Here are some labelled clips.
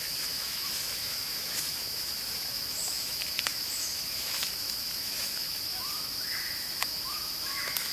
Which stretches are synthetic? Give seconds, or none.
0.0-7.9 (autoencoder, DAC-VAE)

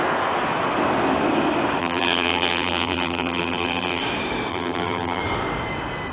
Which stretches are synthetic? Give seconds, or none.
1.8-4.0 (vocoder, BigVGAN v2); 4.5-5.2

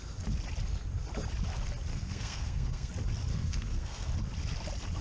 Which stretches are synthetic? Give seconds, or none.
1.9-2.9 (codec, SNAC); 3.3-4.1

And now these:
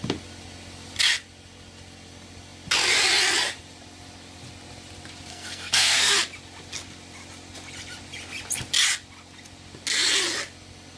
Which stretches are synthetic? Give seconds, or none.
5.3-6.1 (codec, SNAC)

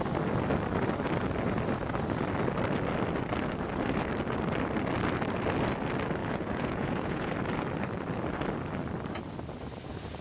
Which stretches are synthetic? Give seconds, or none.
6.2-7.3 (vocoder, Vocos)

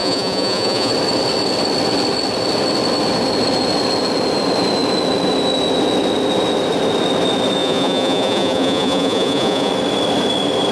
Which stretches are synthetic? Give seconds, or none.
0.0-0.9 (vocoder, Vocos); 7.6-9.7

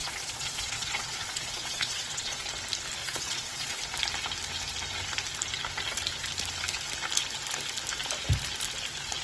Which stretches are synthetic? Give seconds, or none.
0.0-2.4 (vocoder, Vocos); 3.0-3.8

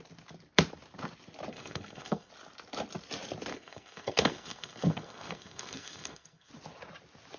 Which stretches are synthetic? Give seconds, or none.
1.5-2.3 (codec, SNAC); 3.5-6.5